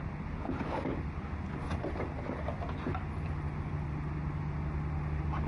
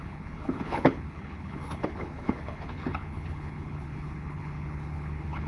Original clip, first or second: first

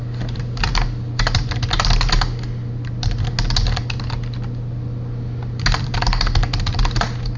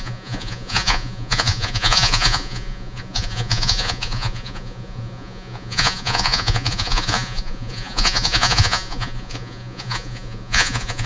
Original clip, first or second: first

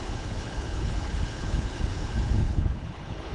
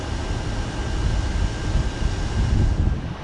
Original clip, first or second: second